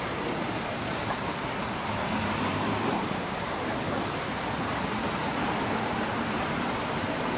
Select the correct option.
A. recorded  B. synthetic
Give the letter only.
B